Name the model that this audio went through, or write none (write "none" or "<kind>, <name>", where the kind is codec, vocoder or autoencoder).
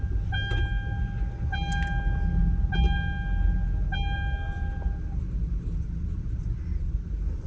none